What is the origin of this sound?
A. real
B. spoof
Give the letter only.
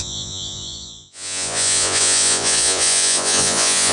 B